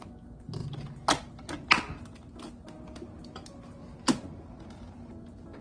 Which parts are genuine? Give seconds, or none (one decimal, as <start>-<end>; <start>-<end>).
0.0-5.6